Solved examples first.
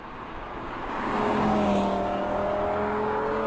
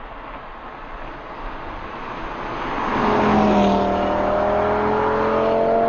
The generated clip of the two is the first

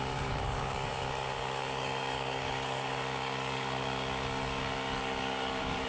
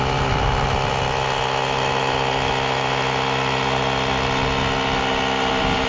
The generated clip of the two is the first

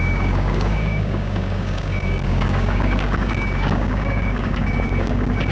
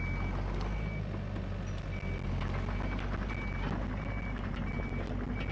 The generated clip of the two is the first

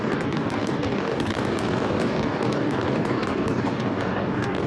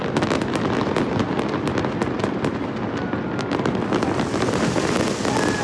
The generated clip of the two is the first